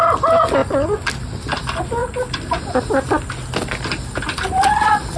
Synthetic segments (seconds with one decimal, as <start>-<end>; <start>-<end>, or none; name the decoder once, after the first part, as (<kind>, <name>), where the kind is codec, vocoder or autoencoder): 2.0-3.1 (vocoder, BigVGAN v2)